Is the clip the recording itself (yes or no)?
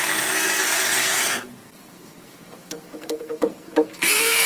no